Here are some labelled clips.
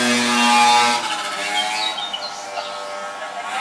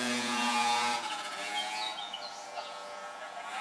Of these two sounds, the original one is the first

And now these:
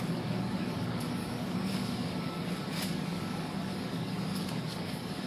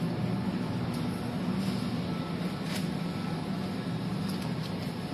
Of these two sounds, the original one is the second